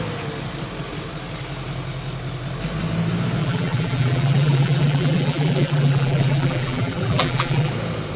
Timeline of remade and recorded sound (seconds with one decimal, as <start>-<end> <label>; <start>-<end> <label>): 0.0-3.4 recorded; 3.4-7.7 remade; 7.7-8.2 recorded